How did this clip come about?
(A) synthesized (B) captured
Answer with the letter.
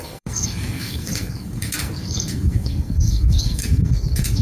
A